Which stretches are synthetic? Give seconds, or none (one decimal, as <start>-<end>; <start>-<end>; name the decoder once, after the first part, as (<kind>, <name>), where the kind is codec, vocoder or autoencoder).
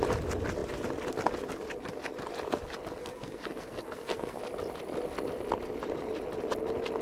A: 3.0-4.4 (codec, SNAC)